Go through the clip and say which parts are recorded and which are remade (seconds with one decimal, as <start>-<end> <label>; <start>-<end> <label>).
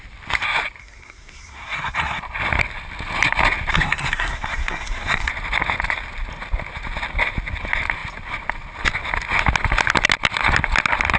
0.0-0.8 recorded; 0.8-2.2 remade; 2.2-3.7 recorded; 3.7-5.3 remade; 5.3-11.2 recorded